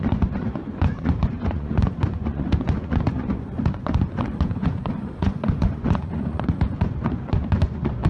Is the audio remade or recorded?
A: remade